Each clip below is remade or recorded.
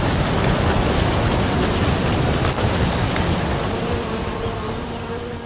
recorded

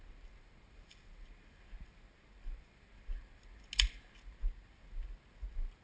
recorded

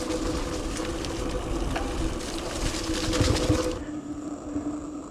recorded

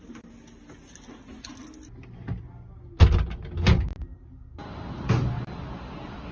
recorded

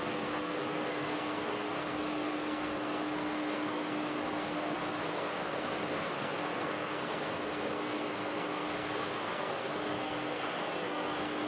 remade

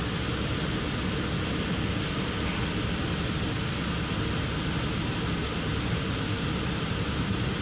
recorded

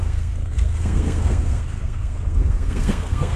remade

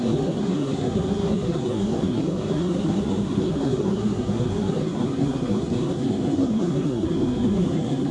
remade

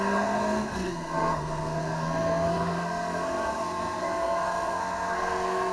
remade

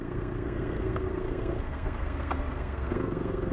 remade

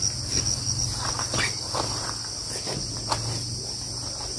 recorded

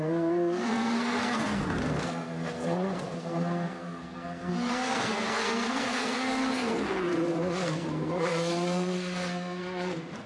remade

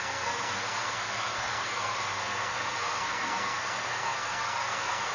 remade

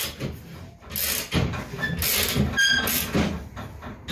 recorded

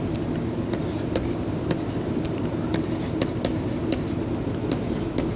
recorded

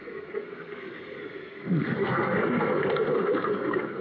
remade